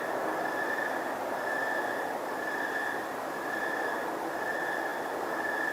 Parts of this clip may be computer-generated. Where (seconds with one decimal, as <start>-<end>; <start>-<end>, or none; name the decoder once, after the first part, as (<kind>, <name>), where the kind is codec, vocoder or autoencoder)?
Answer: none